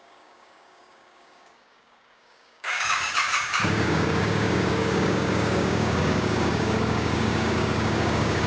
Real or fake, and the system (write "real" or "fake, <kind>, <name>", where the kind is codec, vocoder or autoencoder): fake, codec, DAC